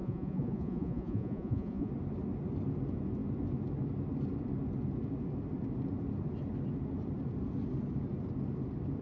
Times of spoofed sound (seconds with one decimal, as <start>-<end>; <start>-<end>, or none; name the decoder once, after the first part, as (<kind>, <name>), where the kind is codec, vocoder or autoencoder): 0.0-1.9 (vocoder, Vocos)